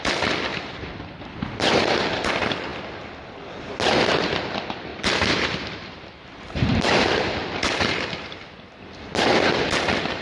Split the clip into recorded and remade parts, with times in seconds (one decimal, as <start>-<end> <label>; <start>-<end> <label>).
0.0-0.5 recorded; 0.5-1.0 remade; 1.0-4.9 recorded; 4.9-8.5 remade; 8.5-10.2 recorded